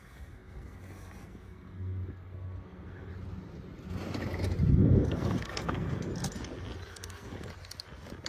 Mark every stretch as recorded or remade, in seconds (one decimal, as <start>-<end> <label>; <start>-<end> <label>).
0.0-3.1 remade; 3.1-4.7 recorded; 4.7-6.1 remade; 6.1-6.9 recorded; 6.9-7.5 remade; 7.5-8.3 recorded